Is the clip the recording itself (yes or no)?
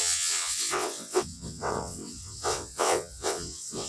no